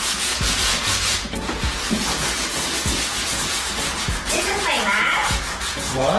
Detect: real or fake fake